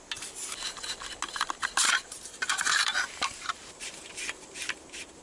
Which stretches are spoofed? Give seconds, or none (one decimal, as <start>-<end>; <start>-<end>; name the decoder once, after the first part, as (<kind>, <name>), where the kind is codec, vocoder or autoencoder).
1.8-5.2 (vocoder, BigVGAN v2)

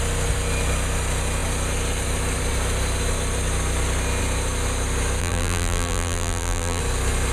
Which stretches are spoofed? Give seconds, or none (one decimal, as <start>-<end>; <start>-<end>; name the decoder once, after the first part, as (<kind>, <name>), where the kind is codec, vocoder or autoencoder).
5.2-6.8 (vocoder, BigVGAN v2)